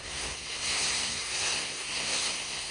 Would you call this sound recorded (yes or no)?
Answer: no